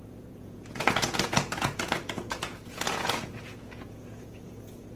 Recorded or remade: remade